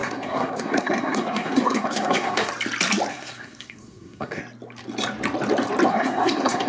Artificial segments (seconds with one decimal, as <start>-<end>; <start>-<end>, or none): 0.0-2.5; 3.1-4.4; 5.9-6.7